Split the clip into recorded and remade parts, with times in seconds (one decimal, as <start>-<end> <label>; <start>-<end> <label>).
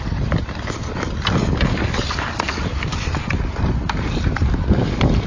0.0-5.3 recorded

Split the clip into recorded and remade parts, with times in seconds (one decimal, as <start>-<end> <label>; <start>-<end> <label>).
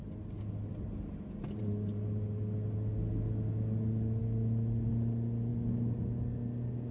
0.0-6.9 recorded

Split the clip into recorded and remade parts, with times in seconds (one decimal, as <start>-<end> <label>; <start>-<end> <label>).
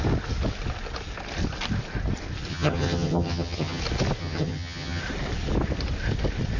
0.0-2.5 recorded; 2.5-3.8 remade; 3.8-4.2 recorded; 4.2-5.0 remade; 5.0-6.6 recorded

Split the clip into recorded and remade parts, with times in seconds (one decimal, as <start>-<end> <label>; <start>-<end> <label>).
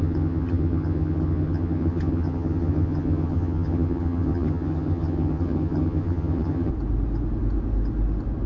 0.0-6.7 remade; 6.7-8.5 recorded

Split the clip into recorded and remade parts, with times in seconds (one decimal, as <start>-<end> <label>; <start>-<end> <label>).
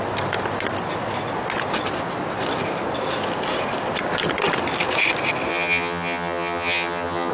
0.0-5.5 recorded; 5.5-7.3 remade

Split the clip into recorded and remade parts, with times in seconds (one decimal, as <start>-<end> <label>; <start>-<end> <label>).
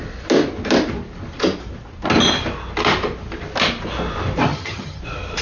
0.0-4.5 recorded; 4.5-5.0 remade; 5.0-5.4 recorded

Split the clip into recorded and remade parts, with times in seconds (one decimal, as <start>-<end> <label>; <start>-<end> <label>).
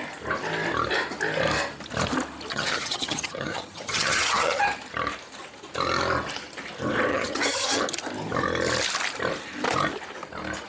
0.0-2.5 recorded; 2.5-4.6 remade; 4.6-7.1 recorded; 7.1-7.8 remade; 7.8-10.7 recorded